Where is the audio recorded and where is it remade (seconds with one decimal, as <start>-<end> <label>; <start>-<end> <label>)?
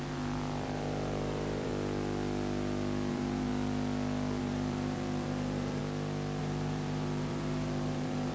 0.0-1.7 remade; 1.7-3.1 recorded; 3.1-3.5 remade; 3.5-4.4 recorded; 4.4-5.8 remade; 5.8-6.4 recorded; 6.4-8.3 remade